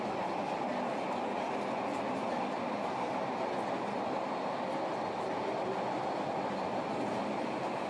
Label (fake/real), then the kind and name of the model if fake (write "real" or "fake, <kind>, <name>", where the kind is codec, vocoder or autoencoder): real